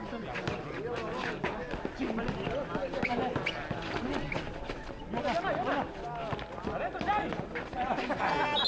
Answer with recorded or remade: recorded